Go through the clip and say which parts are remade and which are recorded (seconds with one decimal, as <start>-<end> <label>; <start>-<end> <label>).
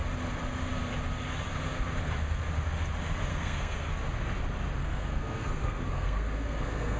0.0-3.3 recorded; 3.3-3.9 remade; 3.9-4.8 recorded; 4.8-7.0 remade